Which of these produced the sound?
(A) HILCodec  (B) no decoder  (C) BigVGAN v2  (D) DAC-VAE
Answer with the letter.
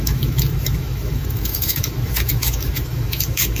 D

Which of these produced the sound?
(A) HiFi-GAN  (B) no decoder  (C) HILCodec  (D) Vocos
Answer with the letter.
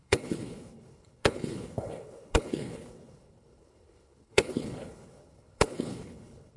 C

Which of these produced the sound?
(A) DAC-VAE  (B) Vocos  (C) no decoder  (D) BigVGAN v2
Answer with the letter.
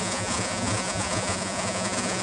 B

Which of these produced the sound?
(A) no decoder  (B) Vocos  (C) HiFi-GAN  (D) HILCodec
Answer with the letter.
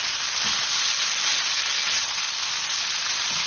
A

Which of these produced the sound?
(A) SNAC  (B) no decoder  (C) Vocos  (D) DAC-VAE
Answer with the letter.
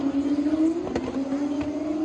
B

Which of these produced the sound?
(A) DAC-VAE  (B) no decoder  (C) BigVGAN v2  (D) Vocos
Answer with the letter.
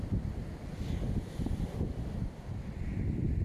B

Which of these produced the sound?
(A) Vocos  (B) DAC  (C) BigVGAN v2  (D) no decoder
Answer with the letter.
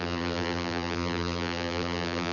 C